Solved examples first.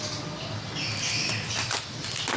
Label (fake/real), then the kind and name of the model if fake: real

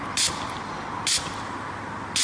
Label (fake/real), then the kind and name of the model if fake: real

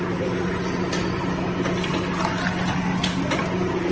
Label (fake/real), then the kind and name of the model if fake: real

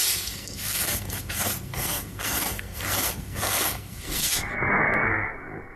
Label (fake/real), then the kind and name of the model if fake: fake, codec, SNAC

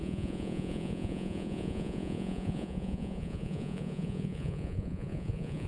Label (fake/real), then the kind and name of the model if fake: fake, vocoder, Vocos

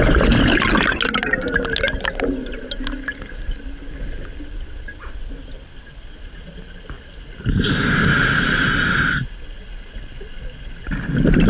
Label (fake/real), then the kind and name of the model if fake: real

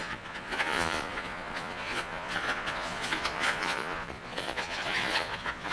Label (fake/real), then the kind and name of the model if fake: fake, vocoder, Vocos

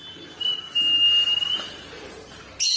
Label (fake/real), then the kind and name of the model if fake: real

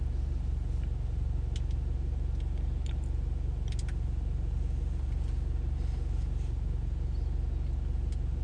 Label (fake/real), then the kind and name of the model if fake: real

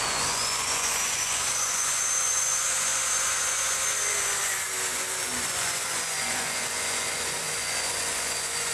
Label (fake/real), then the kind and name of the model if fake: fake, vocoder, Vocos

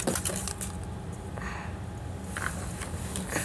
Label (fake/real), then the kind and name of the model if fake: real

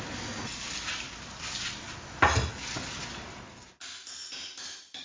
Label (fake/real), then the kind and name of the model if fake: real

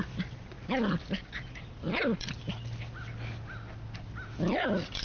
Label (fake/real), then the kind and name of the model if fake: real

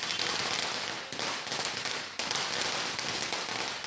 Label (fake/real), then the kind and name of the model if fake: real